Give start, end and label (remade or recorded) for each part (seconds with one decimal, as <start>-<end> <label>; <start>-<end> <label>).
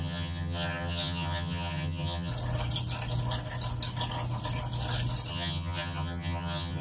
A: 0.0-2.3 remade; 2.3-5.3 recorded; 5.3-6.8 remade